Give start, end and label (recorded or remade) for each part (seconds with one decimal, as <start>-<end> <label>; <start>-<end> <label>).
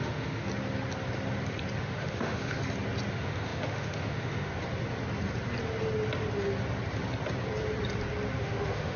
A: 0.0-0.4 remade; 0.4-1.8 recorded; 1.8-2.6 remade; 2.6-3.1 recorded; 3.1-4.5 remade; 4.5-8.4 recorded; 8.4-9.0 remade